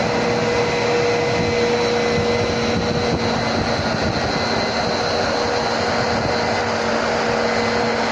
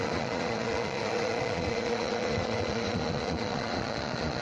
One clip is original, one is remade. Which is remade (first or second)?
second